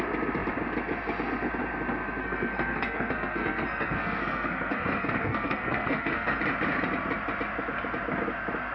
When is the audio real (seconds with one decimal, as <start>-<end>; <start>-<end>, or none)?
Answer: 0.0-2.2; 6.4-8.7